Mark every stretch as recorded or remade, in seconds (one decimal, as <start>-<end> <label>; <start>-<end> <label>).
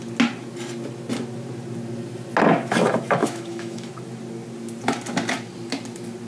0.0-3.2 recorded; 3.2-3.9 remade; 3.9-6.3 recorded